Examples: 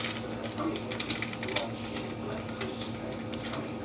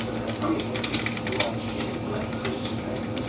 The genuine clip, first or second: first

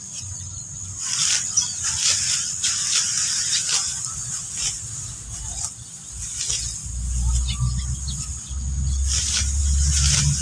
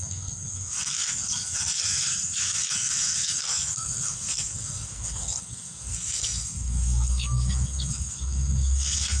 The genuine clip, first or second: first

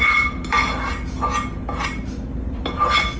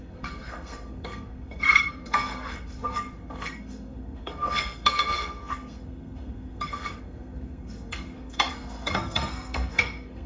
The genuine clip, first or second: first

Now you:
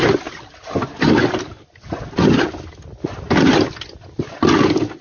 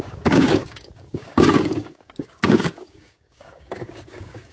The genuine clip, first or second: first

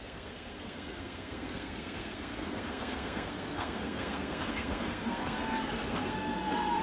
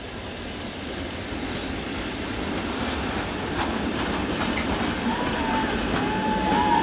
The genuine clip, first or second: second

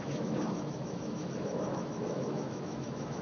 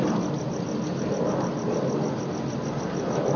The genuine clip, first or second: second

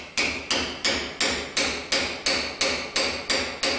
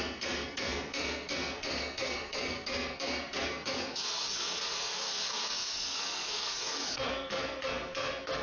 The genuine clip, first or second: first